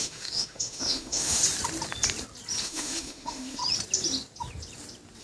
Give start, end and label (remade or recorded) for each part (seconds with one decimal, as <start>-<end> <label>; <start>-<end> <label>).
0.0-1.4 remade; 1.4-2.6 recorded; 2.6-3.6 remade; 3.6-5.2 recorded